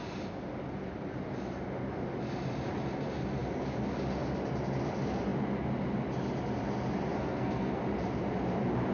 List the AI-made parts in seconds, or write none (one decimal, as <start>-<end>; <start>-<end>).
7.1-7.8